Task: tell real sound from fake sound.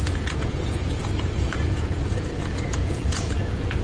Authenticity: fake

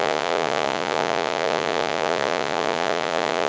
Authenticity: fake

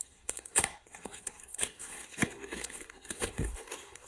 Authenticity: fake